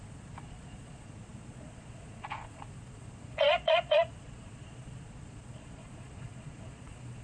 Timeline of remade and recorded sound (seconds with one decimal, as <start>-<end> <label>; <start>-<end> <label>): 0.0-7.2 remade